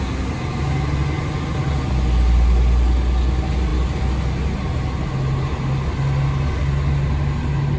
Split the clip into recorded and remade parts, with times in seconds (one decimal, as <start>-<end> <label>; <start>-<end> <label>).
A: 0.0-7.8 recorded